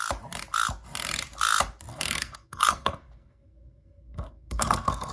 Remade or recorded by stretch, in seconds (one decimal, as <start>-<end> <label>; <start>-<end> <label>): 0.0-1.9 recorded; 1.9-5.1 remade